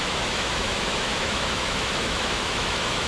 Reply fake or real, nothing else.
fake